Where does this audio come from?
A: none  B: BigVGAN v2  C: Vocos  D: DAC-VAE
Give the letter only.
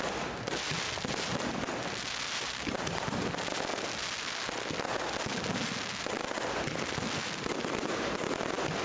A